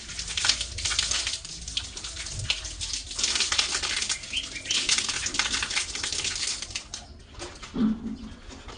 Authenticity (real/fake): real